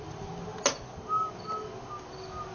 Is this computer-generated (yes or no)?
no